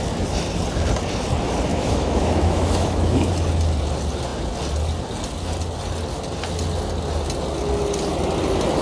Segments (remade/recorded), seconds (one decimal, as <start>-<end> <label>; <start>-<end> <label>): 0.0-1.7 recorded; 1.7-3.3 remade; 3.3-8.8 recorded